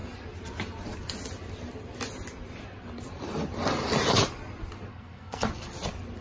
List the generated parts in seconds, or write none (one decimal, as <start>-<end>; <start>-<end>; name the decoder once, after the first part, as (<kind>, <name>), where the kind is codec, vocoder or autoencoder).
4.9-5.5 (codec, SNAC)